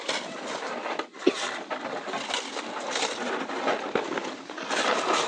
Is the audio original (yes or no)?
yes